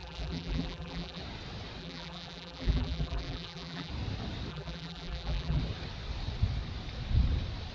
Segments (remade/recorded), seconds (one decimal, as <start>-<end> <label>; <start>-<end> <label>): 0.0-1.2 remade; 1.2-1.8 recorded; 1.8-3.9 remade; 3.9-4.5 recorded; 4.5-5.6 remade; 5.6-7.7 recorded